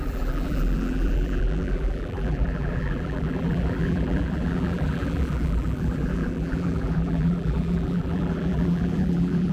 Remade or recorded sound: remade